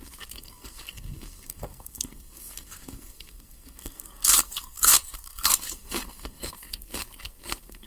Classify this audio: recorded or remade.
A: remade